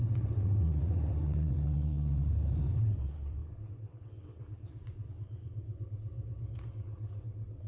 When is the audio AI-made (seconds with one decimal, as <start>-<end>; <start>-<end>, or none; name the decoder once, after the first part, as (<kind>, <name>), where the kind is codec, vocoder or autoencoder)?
0.0-6.1 (vocoder, WaveNeXt); 6.7-7.7

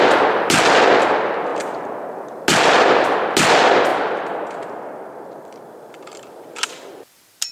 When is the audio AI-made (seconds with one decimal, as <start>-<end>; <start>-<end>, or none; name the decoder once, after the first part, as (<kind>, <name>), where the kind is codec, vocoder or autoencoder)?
none

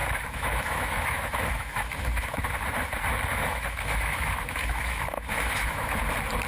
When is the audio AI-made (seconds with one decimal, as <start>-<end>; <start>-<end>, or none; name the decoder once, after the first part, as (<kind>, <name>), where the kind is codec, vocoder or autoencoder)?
0.0-2.4 (autoencoder, DAC-VAE); 3.3-6.0

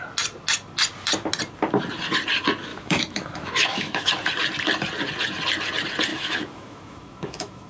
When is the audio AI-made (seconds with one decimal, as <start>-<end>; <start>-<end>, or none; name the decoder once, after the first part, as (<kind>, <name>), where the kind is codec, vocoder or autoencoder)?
2.7-4.1 (autoencoder, DAC-VAE); 6.1-7.7

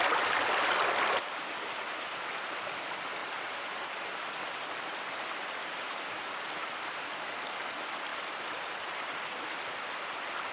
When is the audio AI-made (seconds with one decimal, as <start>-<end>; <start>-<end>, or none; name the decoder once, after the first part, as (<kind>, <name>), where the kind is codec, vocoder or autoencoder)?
none

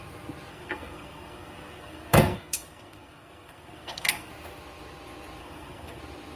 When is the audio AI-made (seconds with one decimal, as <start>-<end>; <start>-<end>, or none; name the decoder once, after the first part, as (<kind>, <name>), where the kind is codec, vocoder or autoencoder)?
0.5-4.3 (codec, SNAC); 5.4-6.0

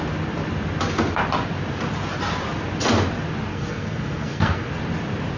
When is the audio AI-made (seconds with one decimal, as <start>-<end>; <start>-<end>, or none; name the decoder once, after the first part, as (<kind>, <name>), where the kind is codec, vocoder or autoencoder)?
3.5-4.7 (codec, SNAC)